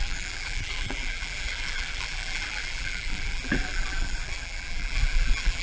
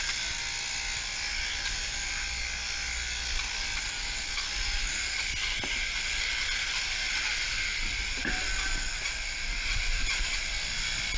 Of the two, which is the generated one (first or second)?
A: first